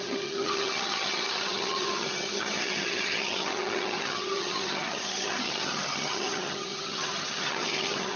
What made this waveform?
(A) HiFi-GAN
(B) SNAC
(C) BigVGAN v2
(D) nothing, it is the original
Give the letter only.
A